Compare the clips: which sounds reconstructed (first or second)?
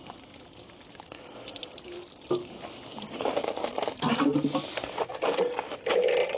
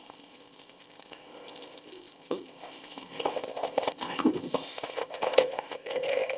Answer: second